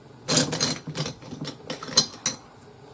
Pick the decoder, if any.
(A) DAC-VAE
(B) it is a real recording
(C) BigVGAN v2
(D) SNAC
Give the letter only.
B